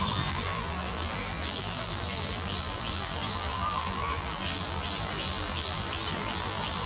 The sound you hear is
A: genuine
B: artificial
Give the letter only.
B